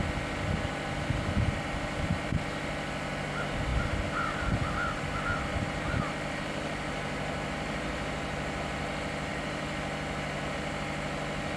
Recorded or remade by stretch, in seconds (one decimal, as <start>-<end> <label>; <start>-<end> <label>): 0.0-11.6 recorded